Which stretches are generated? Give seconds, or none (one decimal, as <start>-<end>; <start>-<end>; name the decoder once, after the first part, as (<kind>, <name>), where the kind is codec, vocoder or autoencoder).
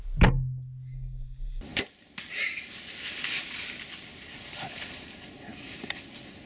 1.7-2.3 (vocoder, BigVGAN v2); 4.1-6.0